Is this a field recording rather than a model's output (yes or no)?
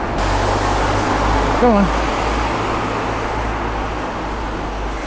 yes